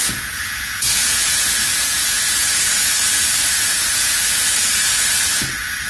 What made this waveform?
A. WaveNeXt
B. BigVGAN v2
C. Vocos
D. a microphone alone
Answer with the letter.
C